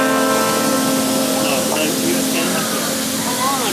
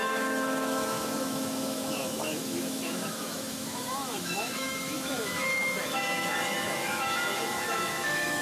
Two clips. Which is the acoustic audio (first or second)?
first